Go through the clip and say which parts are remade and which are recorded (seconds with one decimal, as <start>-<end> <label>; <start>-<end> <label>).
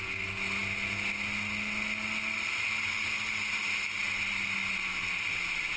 0.0-5.8 recorded